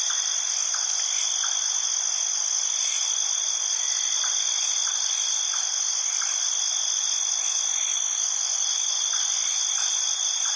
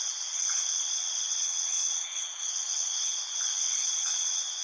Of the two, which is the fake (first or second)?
second